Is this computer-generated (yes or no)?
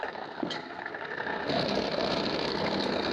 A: yes